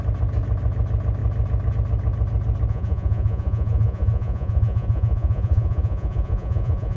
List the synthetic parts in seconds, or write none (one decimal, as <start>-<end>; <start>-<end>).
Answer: 2.7-7.0